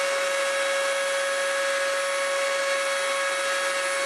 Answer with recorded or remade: recorded